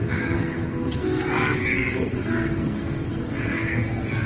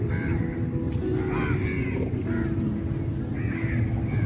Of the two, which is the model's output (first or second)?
first